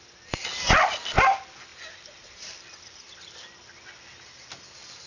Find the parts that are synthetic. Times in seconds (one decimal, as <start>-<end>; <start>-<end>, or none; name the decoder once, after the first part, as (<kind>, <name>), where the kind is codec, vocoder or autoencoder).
none